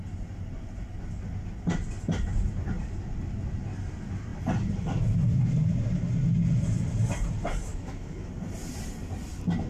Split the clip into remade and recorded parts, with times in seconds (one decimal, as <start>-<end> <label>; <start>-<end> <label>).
0.0-7.7 recorded; 7.7-8.3 remade; 8.3-9.7 recorded